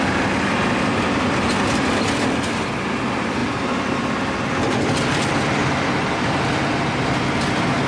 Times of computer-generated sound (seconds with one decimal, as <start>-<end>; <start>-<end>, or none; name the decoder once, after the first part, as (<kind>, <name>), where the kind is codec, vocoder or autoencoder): none